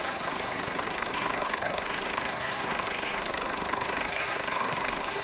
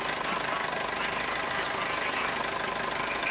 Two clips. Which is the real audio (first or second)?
second